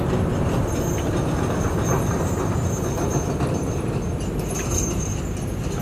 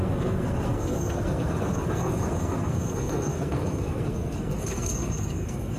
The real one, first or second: first